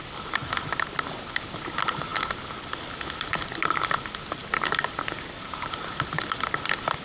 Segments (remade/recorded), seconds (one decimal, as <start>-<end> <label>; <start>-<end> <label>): 0.0-7.0 recorded